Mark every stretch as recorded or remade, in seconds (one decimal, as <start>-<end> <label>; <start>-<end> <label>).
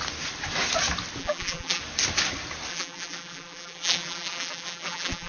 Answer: 0.0-1.2 recorded; 1.2-1.8 remade; 1.8-2.7 recorded; 2.7-5.3 remade